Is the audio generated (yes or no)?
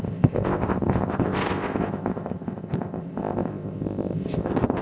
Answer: yes